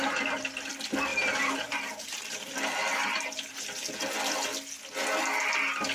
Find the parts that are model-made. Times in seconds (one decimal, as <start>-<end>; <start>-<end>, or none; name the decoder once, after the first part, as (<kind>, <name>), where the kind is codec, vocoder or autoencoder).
0.0-0.7 (vocoder, BigVGAN v2); 1.1-3.6